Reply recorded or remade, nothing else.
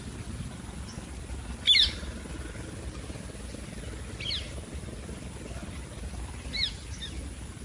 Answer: recorded